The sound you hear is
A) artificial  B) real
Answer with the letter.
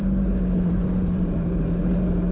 A